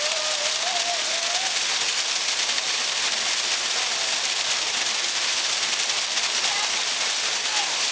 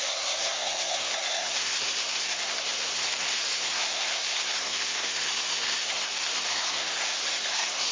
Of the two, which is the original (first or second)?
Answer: first